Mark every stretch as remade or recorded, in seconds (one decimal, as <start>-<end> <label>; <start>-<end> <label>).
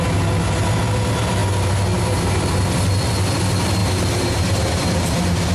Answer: 0.0-3.8 recorded; 3.8-5.5 remade